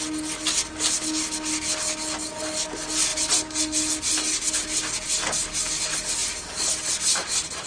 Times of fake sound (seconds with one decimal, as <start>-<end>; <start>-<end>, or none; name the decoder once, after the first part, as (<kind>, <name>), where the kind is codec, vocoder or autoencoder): none